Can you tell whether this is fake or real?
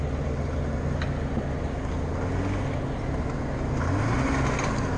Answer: real